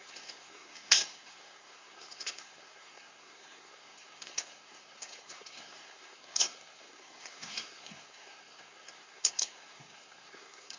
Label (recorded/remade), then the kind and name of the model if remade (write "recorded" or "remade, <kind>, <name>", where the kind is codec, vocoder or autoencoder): remade, codec, SNAC